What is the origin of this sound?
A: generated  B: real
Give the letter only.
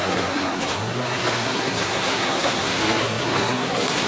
A